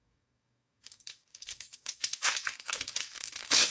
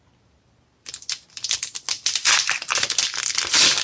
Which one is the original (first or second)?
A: second